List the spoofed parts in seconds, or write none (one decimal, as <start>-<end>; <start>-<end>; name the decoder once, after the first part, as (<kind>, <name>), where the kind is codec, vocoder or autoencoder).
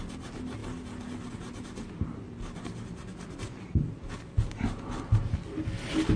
none